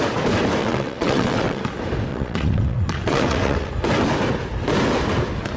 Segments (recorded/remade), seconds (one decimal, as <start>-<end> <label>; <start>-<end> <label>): 0.0-0.6 recorded; 0.6-1.6 remade; 1.6-2.1 recorded; 2.1-3.7 remade; 3.7-5.6 recorded